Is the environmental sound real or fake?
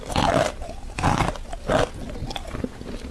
real